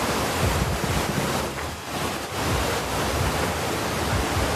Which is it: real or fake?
real